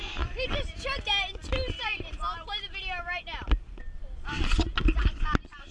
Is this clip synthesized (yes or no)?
no